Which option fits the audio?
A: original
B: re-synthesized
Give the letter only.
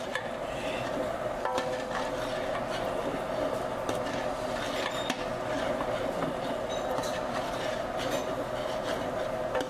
A